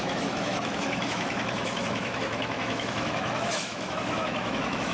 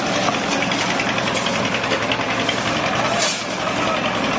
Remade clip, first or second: first